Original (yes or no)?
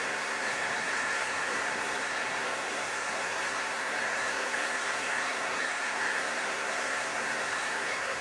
no